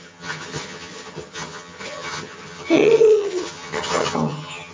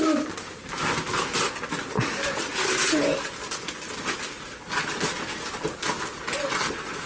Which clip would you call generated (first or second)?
first